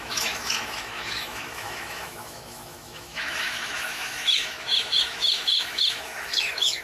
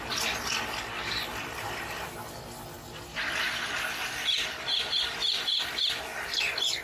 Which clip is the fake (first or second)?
first